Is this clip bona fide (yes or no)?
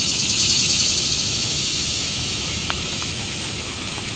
no